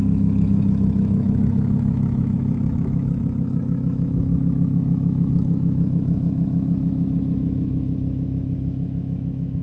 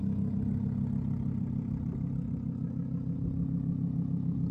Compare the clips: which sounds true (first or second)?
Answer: second